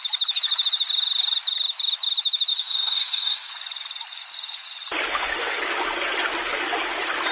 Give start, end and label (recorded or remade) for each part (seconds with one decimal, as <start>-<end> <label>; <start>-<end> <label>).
0.0-2.5 recorded; 2.5-3.5 remade; 3.5-5.1 recorded; 5.1-5.6 remade; 5.6-7.3 recorded